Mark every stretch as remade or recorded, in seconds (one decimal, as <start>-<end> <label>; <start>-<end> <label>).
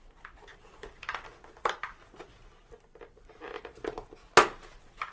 0.0-0.5 recorded; 0.5-3.6 remade; 3.6-5.1 recorded